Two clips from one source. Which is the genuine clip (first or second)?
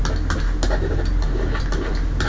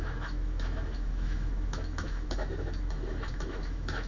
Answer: first